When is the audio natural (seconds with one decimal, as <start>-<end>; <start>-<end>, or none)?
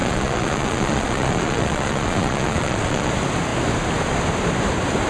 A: 3.1-5.1